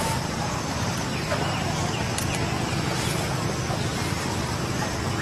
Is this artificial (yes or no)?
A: no